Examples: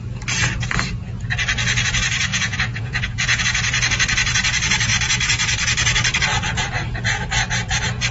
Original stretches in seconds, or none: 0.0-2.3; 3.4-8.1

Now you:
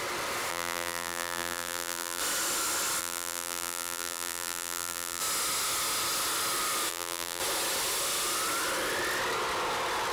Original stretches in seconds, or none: 0.0-0.5; 2.2-3.0; 5.2-6.9; 7.4-10.1

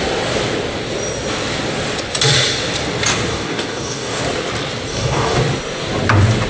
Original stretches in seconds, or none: 0.0-3.3; 4.2-4.9; 5.4-6.5

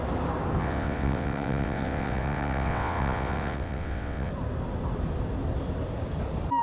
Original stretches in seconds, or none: 0.0-0.6; 4.3-6.6

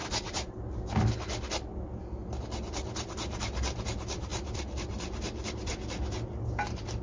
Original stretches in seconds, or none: 0.0-2.0

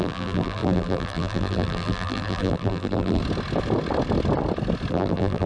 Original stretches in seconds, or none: 3.2-4.9

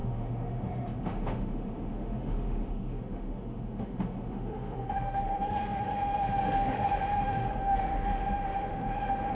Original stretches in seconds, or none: none